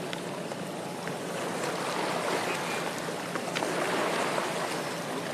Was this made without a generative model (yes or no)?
yes